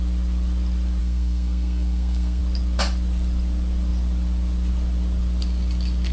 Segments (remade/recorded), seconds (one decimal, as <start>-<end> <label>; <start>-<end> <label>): 0.0-1.0 recorded; 1.0-2.4 remade; 2.4-6.1 recorded